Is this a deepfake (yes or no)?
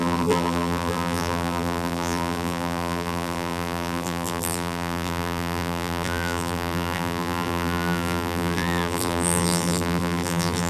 yes